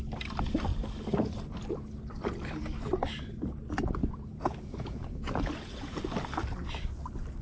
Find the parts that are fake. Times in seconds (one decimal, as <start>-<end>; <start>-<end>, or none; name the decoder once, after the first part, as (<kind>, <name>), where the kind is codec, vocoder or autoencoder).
4.0-6.0 (vocoder, Vocos)